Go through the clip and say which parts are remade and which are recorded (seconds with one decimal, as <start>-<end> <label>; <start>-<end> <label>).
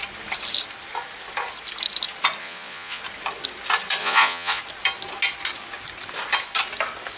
0.0-2.4 recorded; 2.4-3.0 remade; 3.0-4.0 recorded; 4.0-4.6 remade; 4.6-7.2 recorded